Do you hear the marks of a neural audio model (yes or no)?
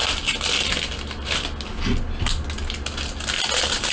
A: no